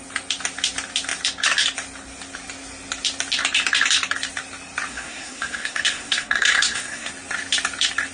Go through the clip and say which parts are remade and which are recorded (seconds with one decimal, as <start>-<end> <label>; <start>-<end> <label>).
0.0-4.9 recorded; 4.9-7.1 remade; 7.1-8.1 recorded